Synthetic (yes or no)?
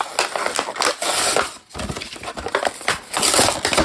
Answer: no